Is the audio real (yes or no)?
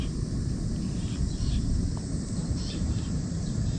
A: no